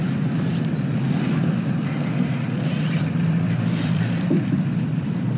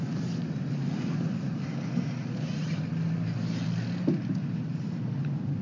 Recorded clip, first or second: second